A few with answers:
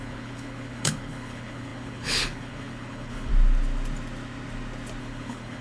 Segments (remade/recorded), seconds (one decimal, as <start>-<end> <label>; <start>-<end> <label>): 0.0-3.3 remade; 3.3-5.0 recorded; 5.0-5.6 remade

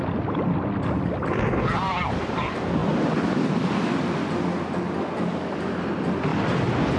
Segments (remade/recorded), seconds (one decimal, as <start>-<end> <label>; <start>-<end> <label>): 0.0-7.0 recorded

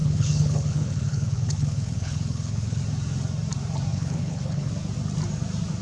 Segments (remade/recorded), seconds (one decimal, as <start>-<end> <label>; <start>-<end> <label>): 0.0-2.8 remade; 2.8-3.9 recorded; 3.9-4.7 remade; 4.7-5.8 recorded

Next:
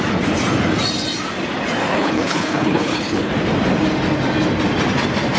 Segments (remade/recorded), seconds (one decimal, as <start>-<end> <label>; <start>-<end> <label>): 0.0-1.9 recorded; 1.9-3.3 remade; 3.3-5.4 recorded

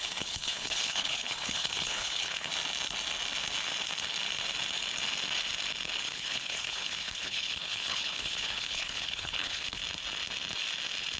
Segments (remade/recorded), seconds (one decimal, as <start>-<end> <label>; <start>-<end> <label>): 0.0-2.5 remade; 2.5-6.0 recorded; 6.0-9.8 remade; 9.8-11.2 recorded

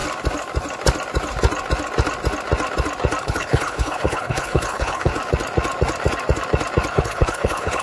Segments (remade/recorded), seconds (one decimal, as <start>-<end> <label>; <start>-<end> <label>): 0.0-3.2 recorded; 3.2-5.1 remade; 5.1-6.9 recorded; 6.9-7.8 remade